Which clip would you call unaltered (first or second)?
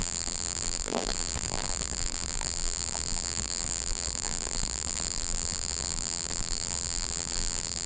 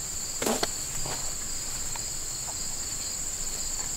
second